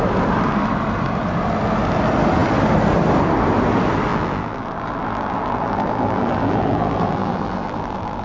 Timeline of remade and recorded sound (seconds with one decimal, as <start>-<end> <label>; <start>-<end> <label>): 0.0-4.1 recorded; 4.1-8.2 remade